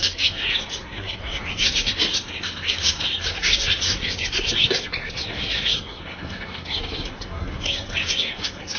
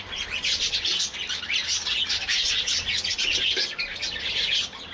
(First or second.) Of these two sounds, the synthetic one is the first